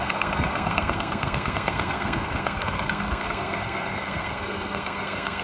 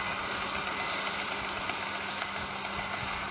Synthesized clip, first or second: first